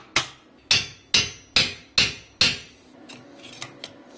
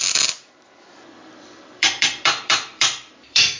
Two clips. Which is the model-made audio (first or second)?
second